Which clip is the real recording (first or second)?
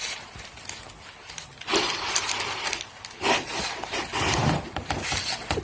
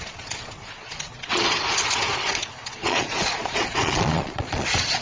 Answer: first